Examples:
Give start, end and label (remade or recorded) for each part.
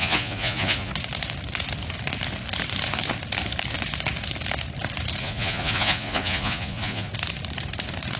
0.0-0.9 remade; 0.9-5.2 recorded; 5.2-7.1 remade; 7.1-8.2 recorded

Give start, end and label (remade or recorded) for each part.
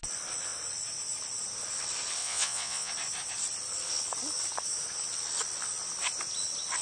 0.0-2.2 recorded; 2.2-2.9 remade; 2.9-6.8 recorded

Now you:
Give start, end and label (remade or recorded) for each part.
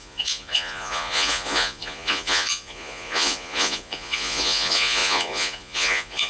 0.0-6.3 remade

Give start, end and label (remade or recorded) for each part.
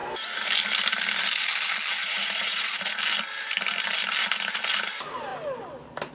0.0-2.0 recorded; 2.0-3.0 remade; 3.0-6.1 recorded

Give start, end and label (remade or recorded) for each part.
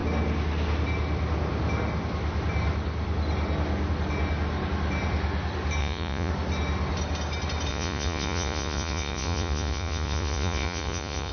0.0-5.8 recorded; 5.8-6.3 remade; 6.3-7.7 recorded; 7.7-11.3 remade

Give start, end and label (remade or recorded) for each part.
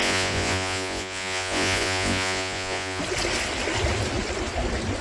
0.0-3.0 remade; 3.0-5.0 recorded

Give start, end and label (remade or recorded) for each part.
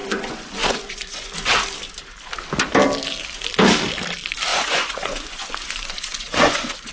0.0-1.3 remade; 1.3-4.5 recorded; 4.5-6.9 remade